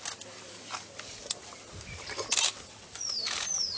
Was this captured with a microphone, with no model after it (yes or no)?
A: yes